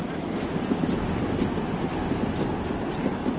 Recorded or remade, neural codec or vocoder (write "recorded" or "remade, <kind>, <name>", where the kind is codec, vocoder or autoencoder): recorded